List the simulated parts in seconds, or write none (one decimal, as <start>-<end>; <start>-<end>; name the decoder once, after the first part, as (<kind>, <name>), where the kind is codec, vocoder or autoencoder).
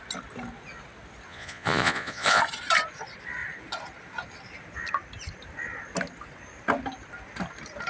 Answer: 1.3-2.4 (vocoder, Vocos)